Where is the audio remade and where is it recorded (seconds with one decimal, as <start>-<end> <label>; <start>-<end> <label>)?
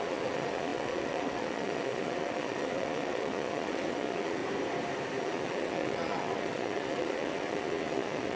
0.0-4.4 remade; 4.4-5.2 recorded; 5.2-8.4 remade